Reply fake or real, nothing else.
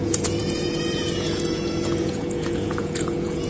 fake